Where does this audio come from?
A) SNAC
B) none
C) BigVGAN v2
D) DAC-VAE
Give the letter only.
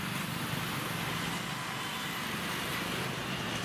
B